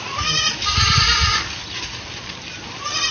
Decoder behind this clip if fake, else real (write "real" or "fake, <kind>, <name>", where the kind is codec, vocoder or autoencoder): real